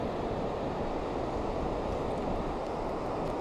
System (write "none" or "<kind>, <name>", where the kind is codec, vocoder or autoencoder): none